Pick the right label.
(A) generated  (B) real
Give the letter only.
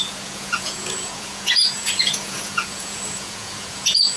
A